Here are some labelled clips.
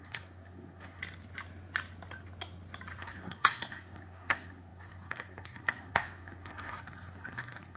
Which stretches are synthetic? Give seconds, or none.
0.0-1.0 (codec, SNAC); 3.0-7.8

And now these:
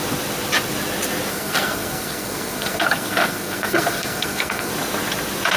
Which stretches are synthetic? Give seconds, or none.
1.3-4.7 (codec, SNAC)

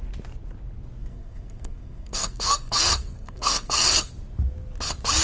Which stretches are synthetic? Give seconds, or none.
1.0-4.1 (codec, SNAC)

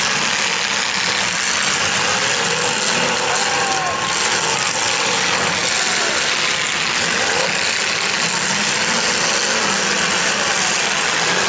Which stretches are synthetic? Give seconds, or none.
none

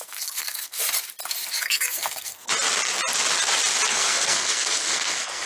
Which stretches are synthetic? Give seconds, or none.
0.0-0.8 (codec, SNAC); 1.6-2.5; 3.9-5.5

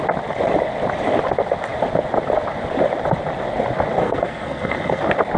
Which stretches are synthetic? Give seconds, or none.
4.0-5.0 (codec, SNAC)

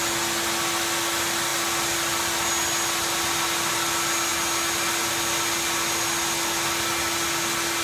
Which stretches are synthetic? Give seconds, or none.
none

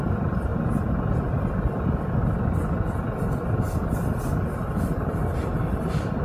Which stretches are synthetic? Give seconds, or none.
none